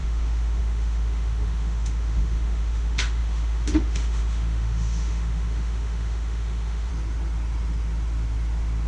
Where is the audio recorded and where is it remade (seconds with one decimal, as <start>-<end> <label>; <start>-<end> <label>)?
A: 0.0-6.9 remade; 6.9-8.9 recorded